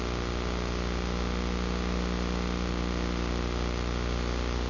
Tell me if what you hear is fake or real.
real